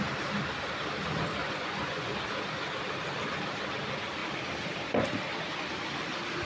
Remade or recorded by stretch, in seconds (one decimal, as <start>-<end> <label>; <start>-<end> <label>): 0.0-1.4 recorded; 1.4-2.1 remade; 2.1-6.4 recorded